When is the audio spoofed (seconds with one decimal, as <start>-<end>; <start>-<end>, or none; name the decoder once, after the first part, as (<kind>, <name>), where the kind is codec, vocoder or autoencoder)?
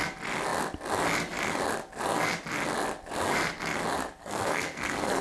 4.2-5.2 (codec, SNAC)